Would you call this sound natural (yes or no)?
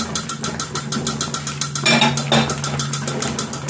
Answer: yes